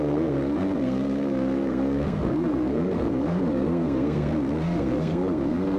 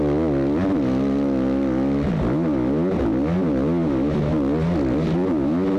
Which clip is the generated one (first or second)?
first